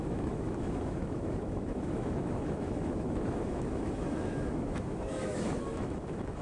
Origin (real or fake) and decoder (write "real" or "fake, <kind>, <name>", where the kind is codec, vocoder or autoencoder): fake, autoencoder, DAC-VAE